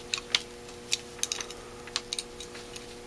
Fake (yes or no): no